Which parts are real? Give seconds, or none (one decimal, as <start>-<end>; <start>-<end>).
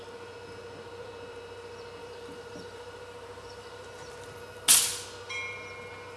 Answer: 0.0-2.0; 4.1-6.2